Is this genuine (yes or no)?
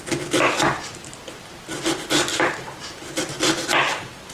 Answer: yes